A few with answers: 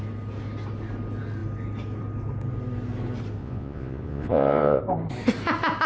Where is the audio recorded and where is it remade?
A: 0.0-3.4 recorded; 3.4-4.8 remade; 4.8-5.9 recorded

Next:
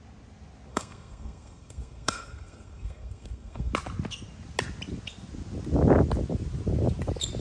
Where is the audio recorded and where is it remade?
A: 0.0-0.7 recorded; 0.7-3.7 remade; 3.7-7.4 recorded

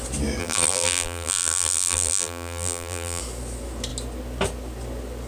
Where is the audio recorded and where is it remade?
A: 0.0-0.4 recorded; 0.4-3.2 remade; 3.2-5.3 recorded

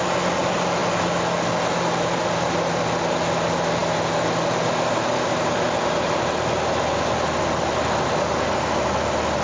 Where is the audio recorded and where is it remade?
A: 0.0-9.4 recorded

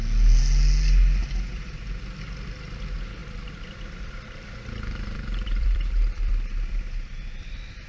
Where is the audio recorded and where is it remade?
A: 0.0-1.2 recorded; 1.2-1.8 remade; 1.8-3.2 recorded; 3.2-7.5 remade; 7.5-7.9 recorded

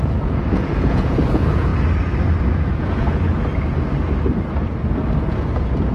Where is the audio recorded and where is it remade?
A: 0.0-1.7 remade; 1.7-2.4 recorded; 2.4-3.3 remade; 3.3-5.2 recorded; 5.2-5.9 remade

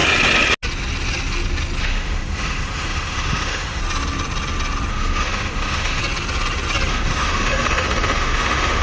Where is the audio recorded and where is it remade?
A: 0.0-1.8 recorded; 1.8-3.8 remade; 3.8-4.9 recorded; 4.9-6.0 remade; 6.0-6.9 recorded; 6.9-8.8 remade